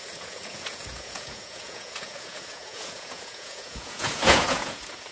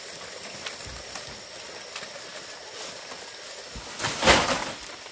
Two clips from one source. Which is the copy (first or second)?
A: first